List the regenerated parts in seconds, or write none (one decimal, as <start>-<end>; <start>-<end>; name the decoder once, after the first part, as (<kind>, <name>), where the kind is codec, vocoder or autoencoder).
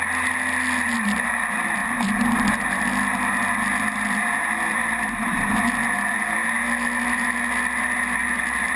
1.8-5.6 (vocoder, BigVGAN v2); 8.2-8.8